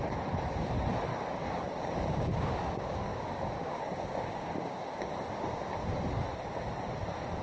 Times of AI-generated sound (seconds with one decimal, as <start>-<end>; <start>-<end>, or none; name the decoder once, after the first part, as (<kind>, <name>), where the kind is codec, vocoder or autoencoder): 1.1-5.5 (codec, DAC)